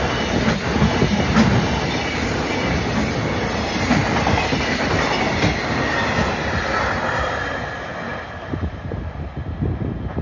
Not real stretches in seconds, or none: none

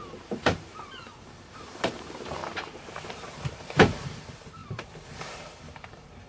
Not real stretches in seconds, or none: 0.0-2.4 (vocoder, BigVGAN v2); 2.9-6.3

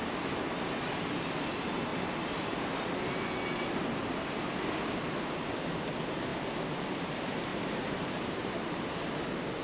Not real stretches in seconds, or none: 1.9-2.8 (vocoder, BigVGAN v2); 7.5-8.7

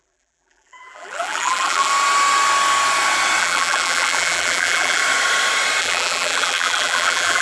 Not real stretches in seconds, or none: 0.0-1.9 (vocoder, BigVGAN v2); 3.4-5.0; 5.8-7.4

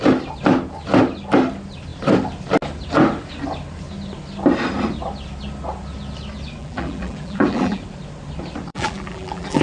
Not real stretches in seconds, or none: 6.6-7.8 (vocoder, BigVGAN v2); 8.7-9.6